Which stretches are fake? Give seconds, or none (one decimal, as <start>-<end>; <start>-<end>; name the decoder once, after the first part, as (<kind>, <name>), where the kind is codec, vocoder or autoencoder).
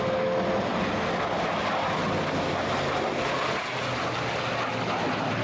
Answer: none